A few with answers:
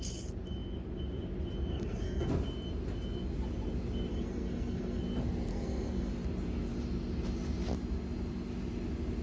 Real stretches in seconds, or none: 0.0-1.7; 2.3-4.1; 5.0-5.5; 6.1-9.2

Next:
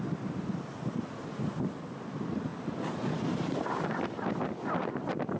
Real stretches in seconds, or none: 0.0-5.4

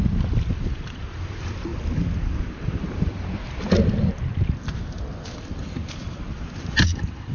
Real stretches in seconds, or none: 1.7-2.4; 4.3-5.3

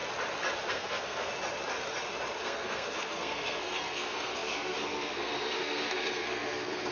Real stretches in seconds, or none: 0.0-0.7; 1.3-2.4

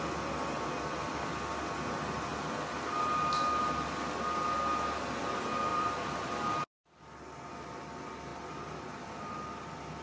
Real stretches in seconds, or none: 0.0-0.7; 1.3-5.7; 6.3-8.3; 9.3-10.0